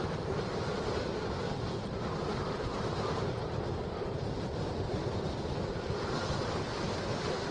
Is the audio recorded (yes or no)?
yes